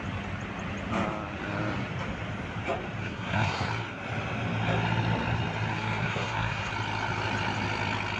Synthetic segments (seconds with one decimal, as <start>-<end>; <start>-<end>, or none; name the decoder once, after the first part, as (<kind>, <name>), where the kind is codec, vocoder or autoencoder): 3.0-3.7 (codec, SNAC); 5.7-6.7